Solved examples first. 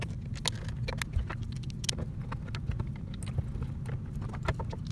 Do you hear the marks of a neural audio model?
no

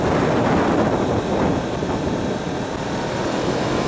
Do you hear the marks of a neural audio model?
no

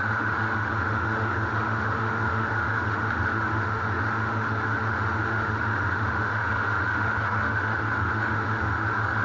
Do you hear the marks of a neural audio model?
yes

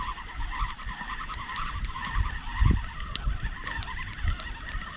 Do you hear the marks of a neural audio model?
no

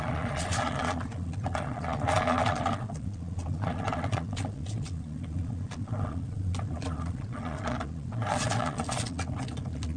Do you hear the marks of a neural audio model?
yes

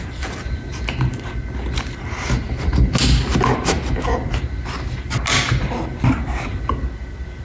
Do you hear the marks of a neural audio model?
no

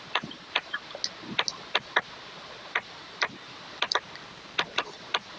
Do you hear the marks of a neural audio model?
no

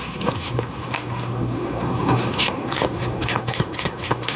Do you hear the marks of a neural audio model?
yes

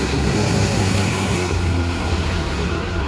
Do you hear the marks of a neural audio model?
yes